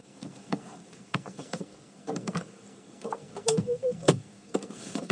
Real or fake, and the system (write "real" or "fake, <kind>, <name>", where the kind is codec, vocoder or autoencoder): fake, codec, SNAC